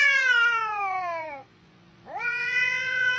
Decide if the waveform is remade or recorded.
remade